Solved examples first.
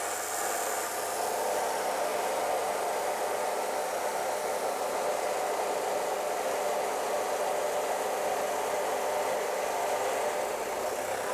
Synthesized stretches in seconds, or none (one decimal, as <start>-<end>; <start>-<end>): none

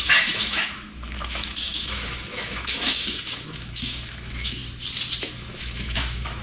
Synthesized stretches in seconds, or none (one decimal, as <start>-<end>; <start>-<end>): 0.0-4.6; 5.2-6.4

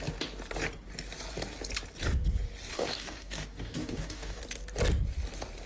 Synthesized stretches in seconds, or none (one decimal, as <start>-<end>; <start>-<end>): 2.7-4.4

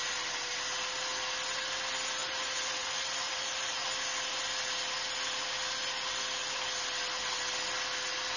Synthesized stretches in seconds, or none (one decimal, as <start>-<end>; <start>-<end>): 2.2-3.8

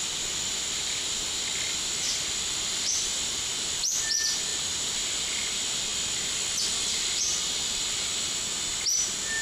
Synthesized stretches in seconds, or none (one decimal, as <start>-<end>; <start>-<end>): none